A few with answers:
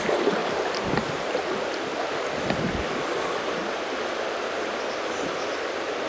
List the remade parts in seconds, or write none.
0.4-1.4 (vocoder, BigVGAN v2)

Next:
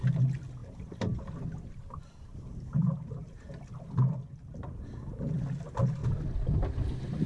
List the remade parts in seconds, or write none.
0.6-1.2 (vocoder, BigVGAN v2)

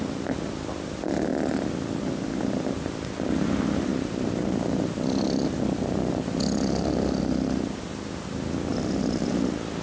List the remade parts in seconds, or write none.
3.9-7.2 (vocoder, BigVGAN v2); 8.7-9.3

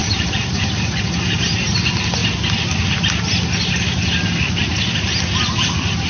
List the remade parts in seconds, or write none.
0.0-1.8 (vocoder, BigVGAN v2)

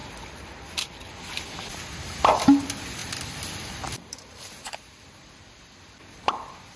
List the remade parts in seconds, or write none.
0.0-0.5 (vocoder, BigVGAN v2); 3.0-4.4